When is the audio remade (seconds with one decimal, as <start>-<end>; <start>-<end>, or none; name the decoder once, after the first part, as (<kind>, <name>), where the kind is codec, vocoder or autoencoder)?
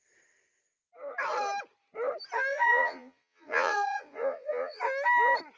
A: 2.5-4.8 (vocoder, Vocos)